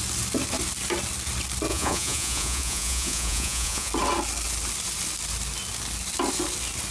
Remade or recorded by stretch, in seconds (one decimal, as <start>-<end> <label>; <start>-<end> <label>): 0.0-1.7 recorded; 1.7-3.9 remade; 3.9-6.9 recorded